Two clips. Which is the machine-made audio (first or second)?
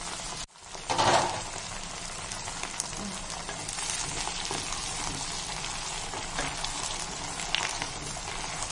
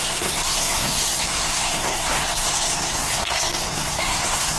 second